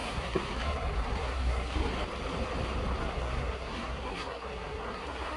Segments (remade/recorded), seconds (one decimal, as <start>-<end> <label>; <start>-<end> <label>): 0.0-1.9 remade; 1.9-3.0 recorded; 3.0-5.4 remade